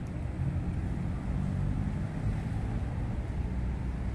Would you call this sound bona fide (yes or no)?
yes